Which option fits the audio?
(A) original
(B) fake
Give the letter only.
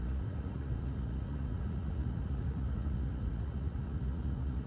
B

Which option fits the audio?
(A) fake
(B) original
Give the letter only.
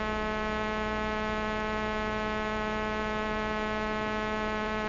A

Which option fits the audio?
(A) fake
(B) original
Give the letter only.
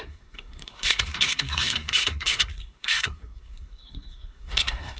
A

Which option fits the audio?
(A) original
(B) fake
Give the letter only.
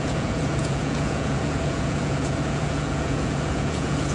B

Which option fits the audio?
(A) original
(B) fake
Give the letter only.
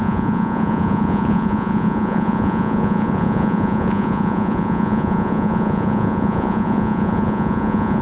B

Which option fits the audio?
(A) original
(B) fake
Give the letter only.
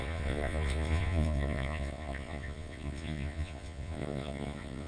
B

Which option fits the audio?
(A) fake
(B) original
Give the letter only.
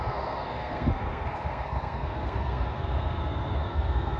A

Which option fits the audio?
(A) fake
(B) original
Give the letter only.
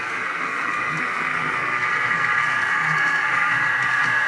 A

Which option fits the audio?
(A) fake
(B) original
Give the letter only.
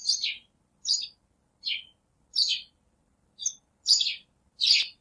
B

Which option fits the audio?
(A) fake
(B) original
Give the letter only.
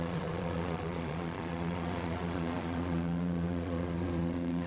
A